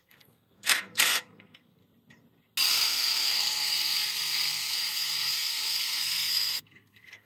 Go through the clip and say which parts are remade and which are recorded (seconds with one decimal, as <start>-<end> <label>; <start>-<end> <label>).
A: 0.0-1.8 remade; 1.8-2.7 recorded; 2.7-7.3 remade